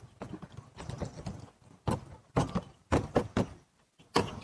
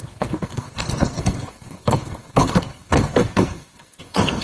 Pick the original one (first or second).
first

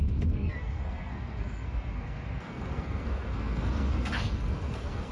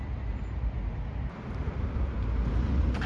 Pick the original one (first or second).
second